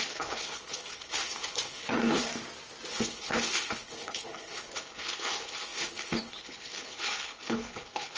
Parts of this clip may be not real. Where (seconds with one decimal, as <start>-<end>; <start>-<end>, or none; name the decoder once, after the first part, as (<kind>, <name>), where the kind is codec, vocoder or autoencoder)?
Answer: 0.0-2.3 (codec, HILCodec); 2.9-8.2